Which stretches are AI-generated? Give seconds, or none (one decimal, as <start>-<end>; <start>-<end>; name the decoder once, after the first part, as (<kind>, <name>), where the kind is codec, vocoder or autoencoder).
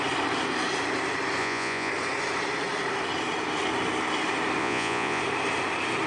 1.4-1.9 (vocoder, Vocos); 4.6-5.2